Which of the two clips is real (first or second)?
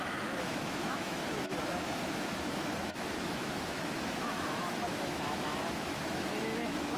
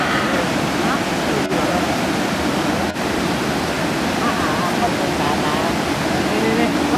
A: second